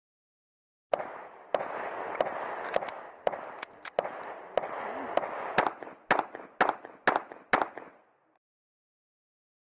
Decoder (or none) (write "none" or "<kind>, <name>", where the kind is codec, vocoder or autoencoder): none